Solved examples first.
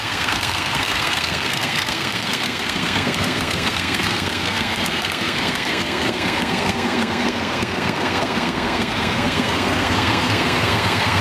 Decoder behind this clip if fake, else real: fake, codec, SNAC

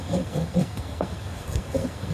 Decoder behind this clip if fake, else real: fake, codec, SNAC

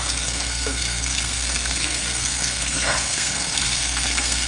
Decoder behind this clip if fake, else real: fake, codec, SNAC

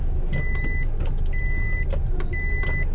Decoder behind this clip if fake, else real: real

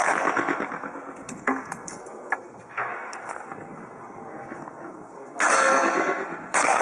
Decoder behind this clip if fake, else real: fake, codec, SNAC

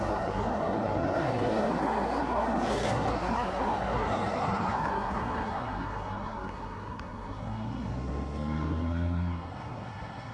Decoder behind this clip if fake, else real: fake, codec, SNAC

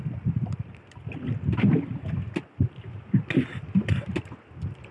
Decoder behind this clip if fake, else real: real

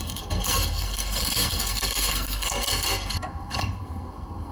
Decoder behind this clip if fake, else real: fake, codec, SNAC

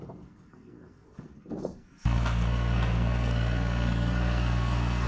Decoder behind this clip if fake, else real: fake, codec, SNAC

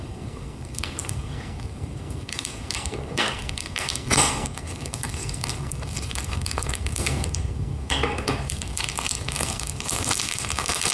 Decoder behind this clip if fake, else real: fake, codec, SNAC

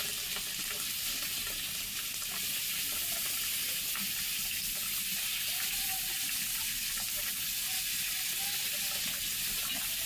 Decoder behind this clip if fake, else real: real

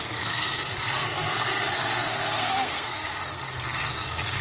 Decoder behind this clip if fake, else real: fake, codec, SNAC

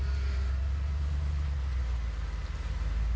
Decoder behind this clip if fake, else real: real